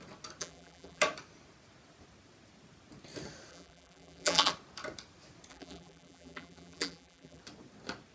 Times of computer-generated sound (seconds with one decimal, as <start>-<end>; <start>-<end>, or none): 0.4-1.0; 3.5-4.5; 5.5-7.4